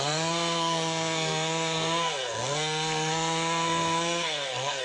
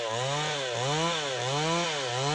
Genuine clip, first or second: second